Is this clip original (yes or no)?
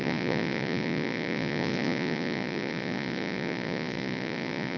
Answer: no